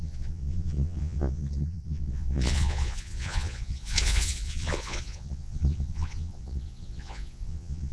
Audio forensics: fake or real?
fake